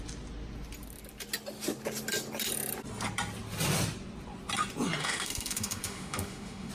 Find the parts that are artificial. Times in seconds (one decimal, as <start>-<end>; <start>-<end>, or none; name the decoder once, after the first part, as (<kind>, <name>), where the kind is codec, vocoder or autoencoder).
5.0-6.7 (autoencoder, DAC-VAE)